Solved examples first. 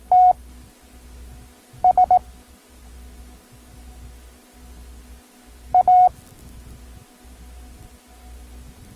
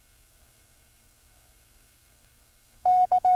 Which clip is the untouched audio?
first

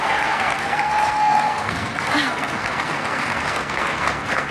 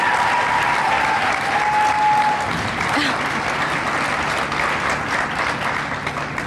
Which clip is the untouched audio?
second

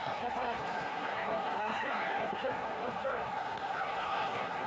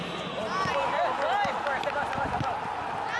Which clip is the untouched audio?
second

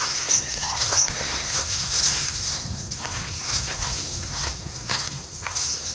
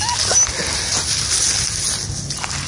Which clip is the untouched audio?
second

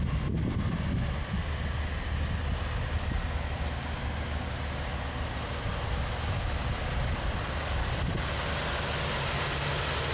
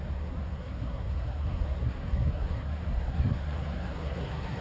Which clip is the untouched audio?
first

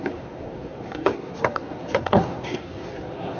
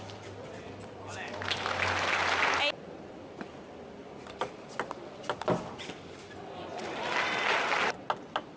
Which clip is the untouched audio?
second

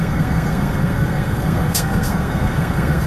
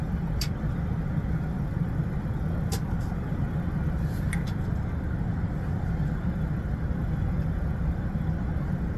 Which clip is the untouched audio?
second